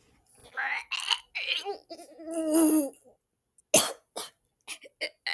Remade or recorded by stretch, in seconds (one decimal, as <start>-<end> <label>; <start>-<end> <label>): 0.0-5.3 recorded